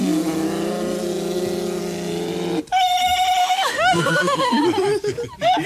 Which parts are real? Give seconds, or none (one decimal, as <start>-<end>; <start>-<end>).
0.0-3.4; 4.6-5.7